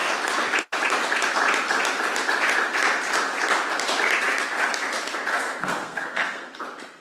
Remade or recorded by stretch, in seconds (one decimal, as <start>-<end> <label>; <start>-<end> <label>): 0.0-5.3 recorded; 5.3-6.6 remade; 6.6-7.0 recorded